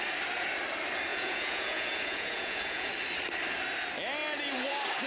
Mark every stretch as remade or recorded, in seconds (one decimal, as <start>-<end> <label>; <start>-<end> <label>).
0.0-1.1 recorded; 1.1-2.9 remade; 2.9-5.1 recorded